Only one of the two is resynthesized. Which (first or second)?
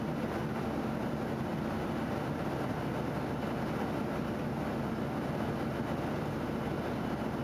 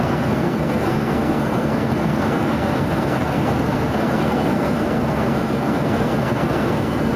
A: second